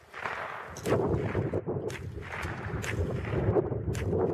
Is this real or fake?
real